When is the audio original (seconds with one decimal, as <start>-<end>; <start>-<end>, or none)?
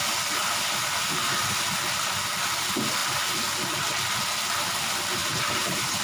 0.0-5.2